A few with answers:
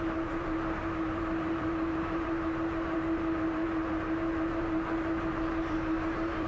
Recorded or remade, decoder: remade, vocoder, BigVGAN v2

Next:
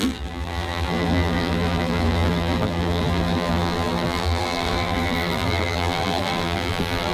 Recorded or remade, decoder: remade, vocoder, BigVGAN v2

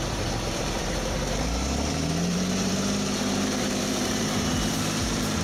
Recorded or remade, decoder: remade, vocoder, BigVGAN v2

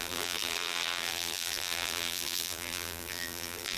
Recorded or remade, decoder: remade, vocoder, BigVGAN v2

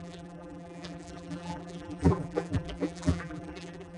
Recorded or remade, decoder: remade, vocoder, BigVGAN v2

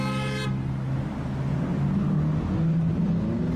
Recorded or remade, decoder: recorded